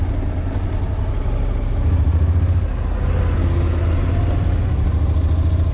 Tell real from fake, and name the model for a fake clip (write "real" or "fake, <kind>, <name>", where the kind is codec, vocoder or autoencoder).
real